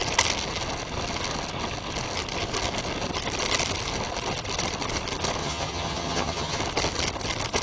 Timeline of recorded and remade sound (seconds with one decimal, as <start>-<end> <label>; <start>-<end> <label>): 0.0-5.4 recorded; 5.4-6.6 remade; 6.6-7.6 recorded